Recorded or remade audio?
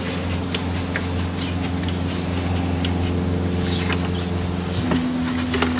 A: recorded